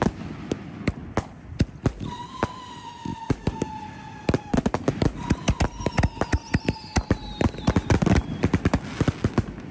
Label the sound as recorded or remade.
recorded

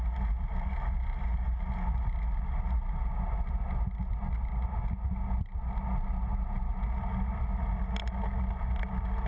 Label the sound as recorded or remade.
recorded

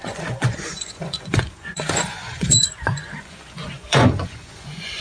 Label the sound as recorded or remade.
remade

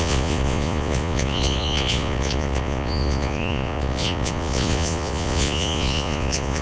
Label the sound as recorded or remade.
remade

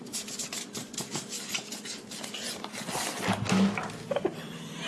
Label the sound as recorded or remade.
recorded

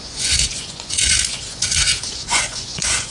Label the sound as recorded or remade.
remade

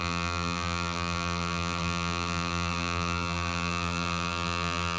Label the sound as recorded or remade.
remade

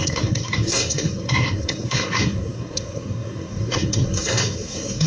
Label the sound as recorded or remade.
remade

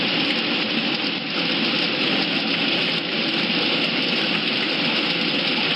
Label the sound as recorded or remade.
recorded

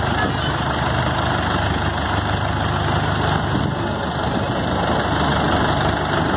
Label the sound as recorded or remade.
recorded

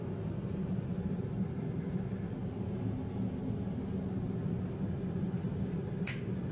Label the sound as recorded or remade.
recorded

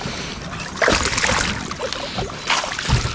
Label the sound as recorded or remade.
recorded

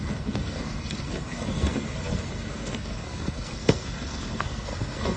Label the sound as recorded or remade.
remade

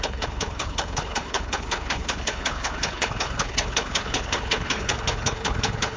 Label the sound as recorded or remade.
remade